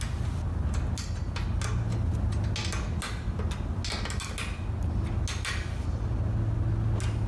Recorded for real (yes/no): yes